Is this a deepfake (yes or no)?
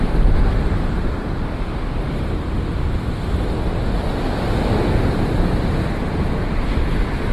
no